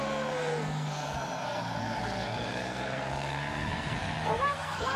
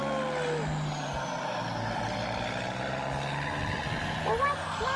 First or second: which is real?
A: second